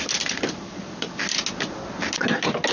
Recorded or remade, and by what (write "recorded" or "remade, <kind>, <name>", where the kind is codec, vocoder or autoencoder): recorded